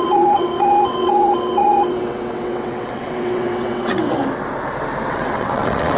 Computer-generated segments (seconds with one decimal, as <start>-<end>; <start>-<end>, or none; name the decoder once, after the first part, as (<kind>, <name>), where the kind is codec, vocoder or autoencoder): 0.0-4.2 (vocoder, WaveNeXt); 5.1-6.0